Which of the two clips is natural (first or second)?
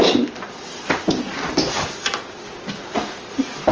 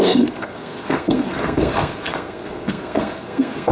first